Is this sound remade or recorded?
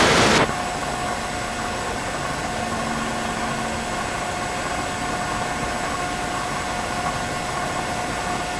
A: recorded